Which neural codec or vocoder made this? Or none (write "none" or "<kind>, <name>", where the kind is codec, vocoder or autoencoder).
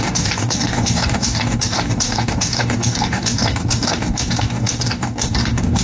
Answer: codec, DAC